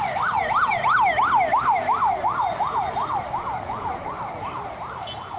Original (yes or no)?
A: yes